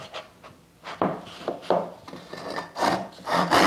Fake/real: fake